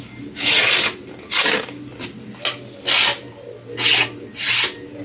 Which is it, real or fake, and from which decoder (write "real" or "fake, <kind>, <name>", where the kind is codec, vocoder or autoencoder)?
real